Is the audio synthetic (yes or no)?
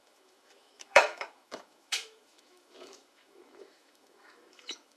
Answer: yes